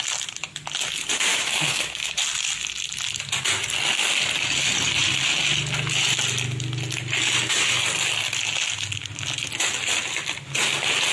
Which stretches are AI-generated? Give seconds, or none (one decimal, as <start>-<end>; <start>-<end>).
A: 1.3-2.1